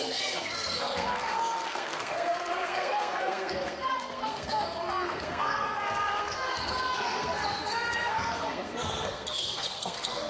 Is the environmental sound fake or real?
fake